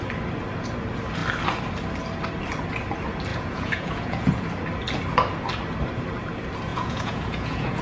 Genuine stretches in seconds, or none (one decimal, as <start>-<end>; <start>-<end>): 0.0-3.3; 4.5-6.7